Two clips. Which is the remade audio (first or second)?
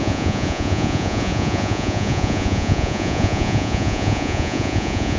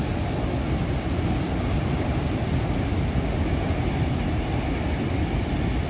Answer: first